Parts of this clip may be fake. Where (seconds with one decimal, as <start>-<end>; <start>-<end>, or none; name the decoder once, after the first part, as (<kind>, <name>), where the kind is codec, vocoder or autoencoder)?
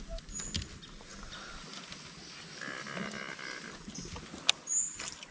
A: none